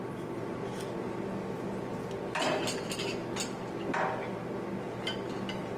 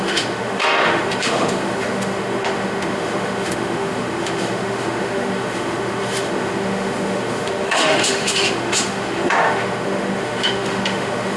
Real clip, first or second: first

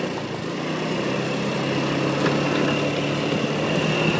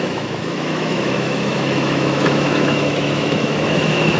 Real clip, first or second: first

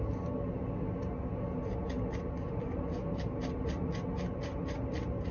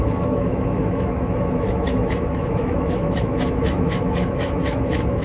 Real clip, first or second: first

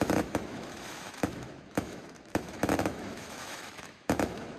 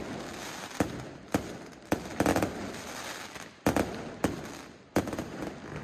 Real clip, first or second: second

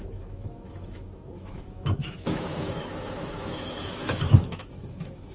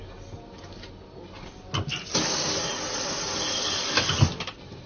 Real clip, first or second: second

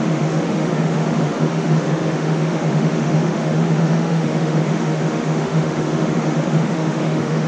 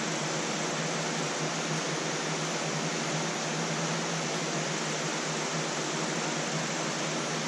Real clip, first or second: second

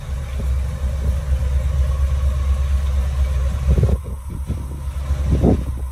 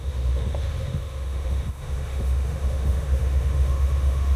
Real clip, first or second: first